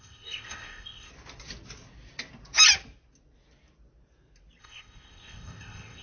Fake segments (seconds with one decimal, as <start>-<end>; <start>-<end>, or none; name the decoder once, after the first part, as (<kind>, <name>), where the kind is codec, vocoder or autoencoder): 0.0-1.1 (codec, ZipCodec); 4.6-6.0